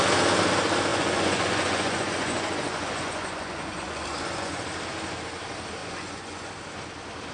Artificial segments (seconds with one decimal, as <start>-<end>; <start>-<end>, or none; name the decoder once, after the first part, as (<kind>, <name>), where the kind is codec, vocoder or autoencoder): 0.9-4.6 (vocoder, Vocos); 5.8-6.5